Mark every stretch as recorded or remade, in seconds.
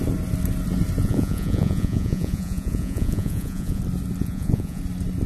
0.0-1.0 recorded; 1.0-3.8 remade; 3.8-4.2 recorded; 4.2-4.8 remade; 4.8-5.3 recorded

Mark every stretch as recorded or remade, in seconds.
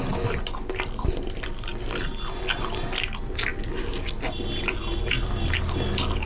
0.0-6.3 recorded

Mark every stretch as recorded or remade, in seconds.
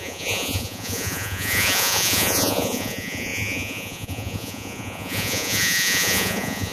0.0-6.7 remade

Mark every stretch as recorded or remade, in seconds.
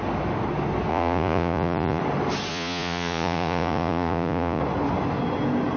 0.0-0.9 recorded; 0.9-2.0 remade; 2.0-2.5 recorded; 2.5-4.6 remade; 4.6-5.8 recorded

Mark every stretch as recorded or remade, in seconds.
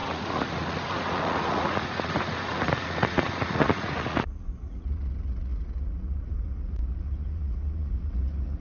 0.0-8.6 remade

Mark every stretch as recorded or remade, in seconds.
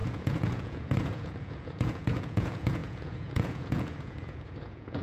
0.0-5.0 remade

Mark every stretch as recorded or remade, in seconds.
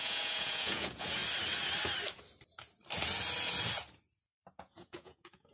0.0-1.2 remade; 1.2-4.5 recorded; 4.5-5.5 remade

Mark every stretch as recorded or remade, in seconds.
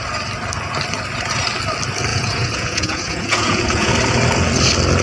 0.0-2.1 recorded; 2.1-3.9 remade; 3.9-5.0 recorded